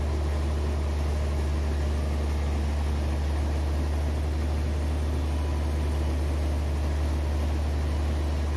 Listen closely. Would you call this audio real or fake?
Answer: real